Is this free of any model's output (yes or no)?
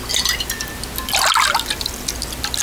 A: yes